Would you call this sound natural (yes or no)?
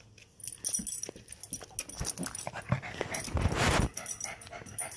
yes